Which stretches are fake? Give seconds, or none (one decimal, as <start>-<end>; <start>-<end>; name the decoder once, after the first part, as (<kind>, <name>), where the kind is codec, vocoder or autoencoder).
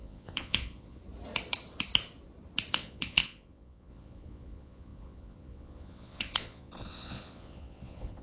0.0-1.0 (vocoder, Vocos); 2.7-8.2